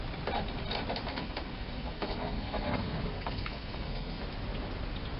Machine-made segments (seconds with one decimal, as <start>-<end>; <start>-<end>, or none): 1.1-4.2